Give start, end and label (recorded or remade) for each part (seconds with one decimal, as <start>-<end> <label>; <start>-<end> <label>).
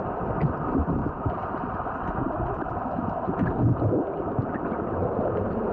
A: 0.0-1.0 recorded; 1.0-4.4 remade; 4.4-5.0 recorded; 5.0-5.7 remade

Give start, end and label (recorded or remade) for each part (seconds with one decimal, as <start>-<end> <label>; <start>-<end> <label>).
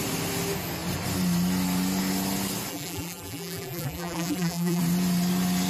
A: 0.0-2.7 recorded; 2.7-4.8 remade; 4.8-5.7 recorded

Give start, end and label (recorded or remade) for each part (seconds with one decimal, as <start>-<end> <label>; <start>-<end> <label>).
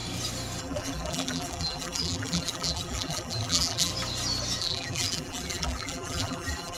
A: 0.0-0.6 recorded; 0.6-3.9 remade; 3.9-4.6 recorded; 4.6-6.8 remade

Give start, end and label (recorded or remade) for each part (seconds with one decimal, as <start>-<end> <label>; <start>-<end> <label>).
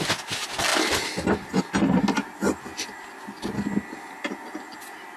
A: 0.0-5.2 recorded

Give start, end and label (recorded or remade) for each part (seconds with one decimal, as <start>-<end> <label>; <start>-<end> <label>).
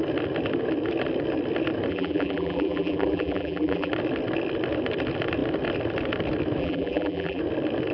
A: 0.0-1.9 recorded; 1.9-3.9 remade; 3.9-6.6 recorded; 6.6-7.4 remade; 7.4-7.9 recorded